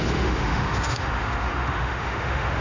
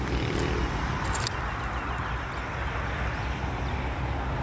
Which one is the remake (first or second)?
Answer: first